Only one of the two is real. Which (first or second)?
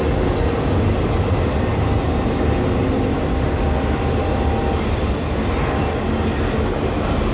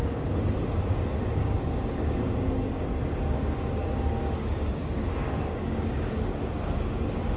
first